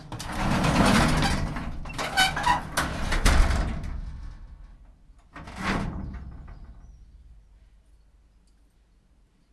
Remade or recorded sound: recorded